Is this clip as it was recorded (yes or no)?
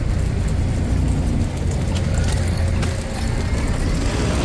yes